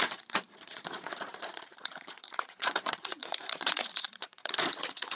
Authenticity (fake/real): fake